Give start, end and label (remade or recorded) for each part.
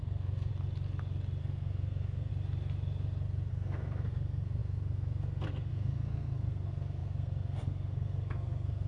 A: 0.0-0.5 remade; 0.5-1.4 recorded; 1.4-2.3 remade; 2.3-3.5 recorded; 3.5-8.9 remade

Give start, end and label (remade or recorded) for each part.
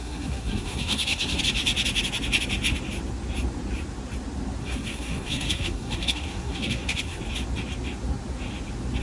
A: 0.0-1.4 remade; 1.4-4.6 recorded; 4.6-7.2 remade; 7.2-9.0 recorded